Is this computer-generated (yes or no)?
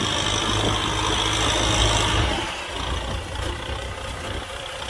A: no